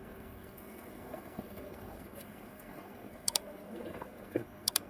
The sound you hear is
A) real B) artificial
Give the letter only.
B